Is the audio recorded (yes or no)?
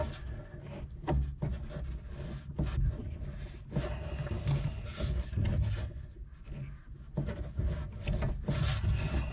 yes